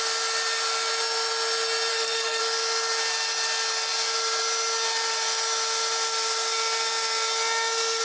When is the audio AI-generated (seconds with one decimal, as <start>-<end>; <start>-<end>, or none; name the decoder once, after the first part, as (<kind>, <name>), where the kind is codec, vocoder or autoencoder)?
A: 1.9-2.4 (codec, SNAC)